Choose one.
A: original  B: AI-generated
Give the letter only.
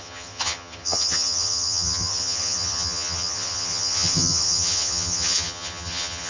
B